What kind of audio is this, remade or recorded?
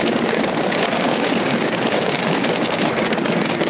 remade